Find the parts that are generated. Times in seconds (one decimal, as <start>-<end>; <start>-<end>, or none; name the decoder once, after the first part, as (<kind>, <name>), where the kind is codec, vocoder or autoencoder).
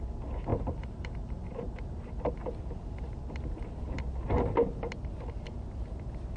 0.5-2.2 (vocoder, BigVGAN v2)